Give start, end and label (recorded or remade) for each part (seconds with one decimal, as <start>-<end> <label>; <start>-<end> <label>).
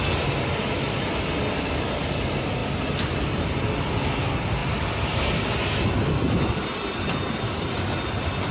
0.0-8.5 recorded